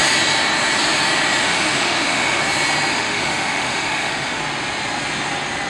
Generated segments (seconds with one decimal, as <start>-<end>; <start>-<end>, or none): 1.4-2.4; 2.9-4.4